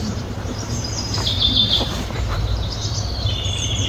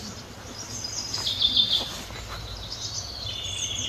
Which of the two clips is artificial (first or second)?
first